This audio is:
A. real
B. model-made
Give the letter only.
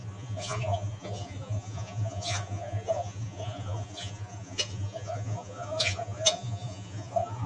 B